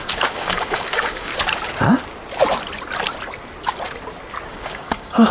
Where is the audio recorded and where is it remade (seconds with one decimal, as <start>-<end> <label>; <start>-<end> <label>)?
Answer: 0.0-1.3 remade; 1.3-4.5 recorded; 4.5-5.3 remade